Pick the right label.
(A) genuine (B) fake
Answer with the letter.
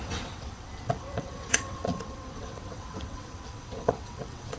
B